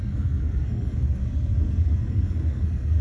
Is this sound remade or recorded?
remade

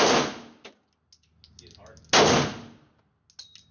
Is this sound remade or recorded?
recorded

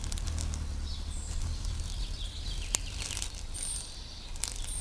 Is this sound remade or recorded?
recorded